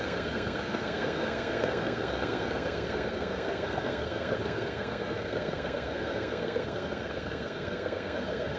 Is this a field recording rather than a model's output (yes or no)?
no